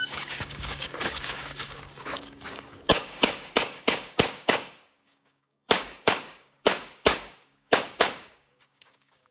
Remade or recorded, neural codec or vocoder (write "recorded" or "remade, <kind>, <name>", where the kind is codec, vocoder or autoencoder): remade, codec, DAC